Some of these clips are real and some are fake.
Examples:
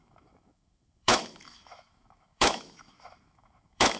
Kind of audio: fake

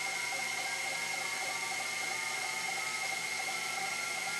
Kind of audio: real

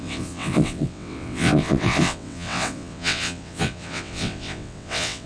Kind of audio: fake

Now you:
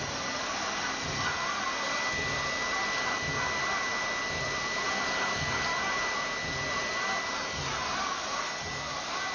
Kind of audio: real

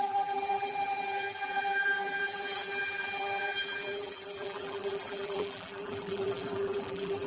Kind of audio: fake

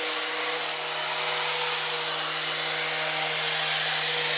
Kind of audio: real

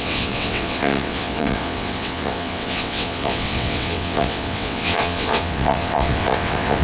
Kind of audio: fake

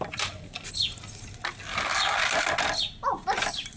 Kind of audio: real